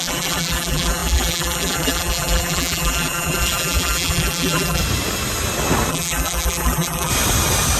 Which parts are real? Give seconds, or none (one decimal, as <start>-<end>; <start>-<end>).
4.8-5.9; 7.1-7.8